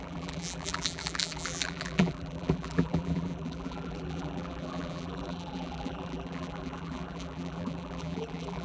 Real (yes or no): no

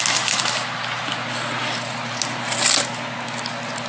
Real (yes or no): yes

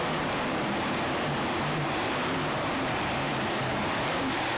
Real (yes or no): no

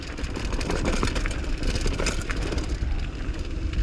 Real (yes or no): no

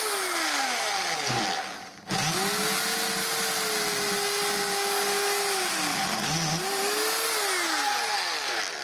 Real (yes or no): yes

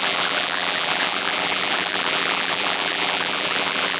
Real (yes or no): no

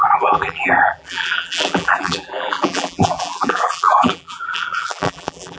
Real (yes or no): no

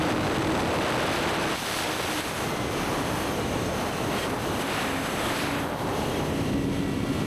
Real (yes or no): yes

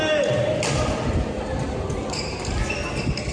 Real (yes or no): yes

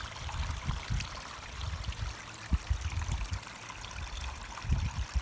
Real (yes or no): no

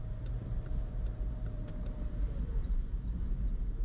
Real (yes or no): no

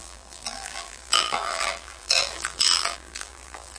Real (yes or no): no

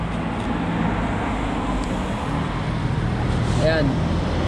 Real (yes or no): yes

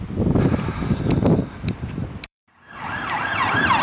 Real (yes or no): no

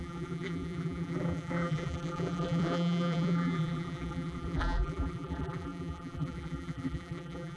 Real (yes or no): no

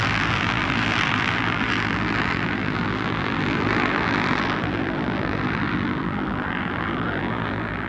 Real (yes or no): no